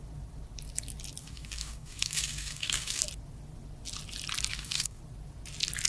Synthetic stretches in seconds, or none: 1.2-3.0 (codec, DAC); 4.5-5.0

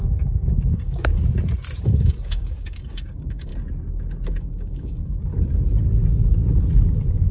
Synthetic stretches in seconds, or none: 0.0-1.1 (codec, DAC); 1.8-3.5; 4.4-5.3

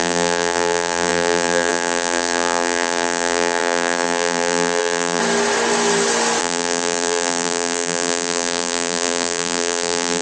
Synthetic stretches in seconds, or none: 0.0-5.2 (vocoder, BigVGAN v2); 6.4-10.2

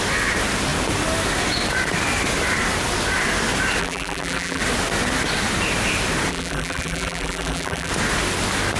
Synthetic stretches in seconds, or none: 3.8-4.6 (vocoder, BigVGAN v2); 6.3-7.9

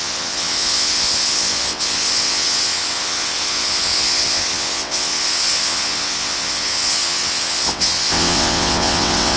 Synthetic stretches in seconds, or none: 0.0-9.4 (vocoder, WaveNeXt)

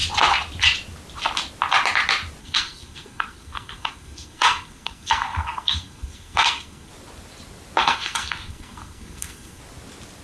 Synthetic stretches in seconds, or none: 2.4-6.9 (codec, SNAC); 7.8-9.6

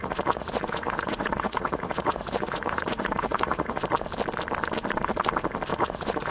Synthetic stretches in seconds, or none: 0.0-3.8 (vocoder, Vocos); 5.7-6.3